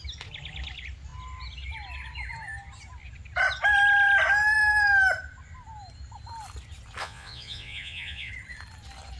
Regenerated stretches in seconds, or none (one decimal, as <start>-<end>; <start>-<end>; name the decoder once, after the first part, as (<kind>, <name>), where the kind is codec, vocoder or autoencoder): 7.0-8.3 (vocoder, Vocos)